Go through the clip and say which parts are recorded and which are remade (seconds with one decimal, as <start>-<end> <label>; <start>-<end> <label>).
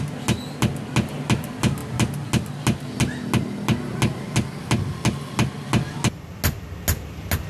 0.0-7.5 recorded